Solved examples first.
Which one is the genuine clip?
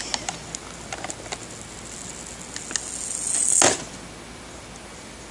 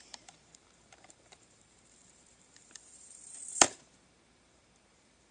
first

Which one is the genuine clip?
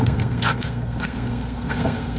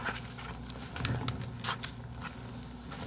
second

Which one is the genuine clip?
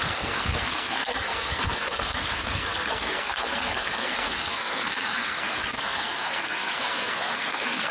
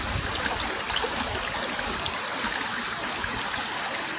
second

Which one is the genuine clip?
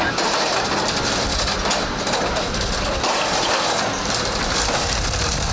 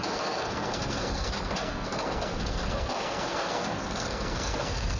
first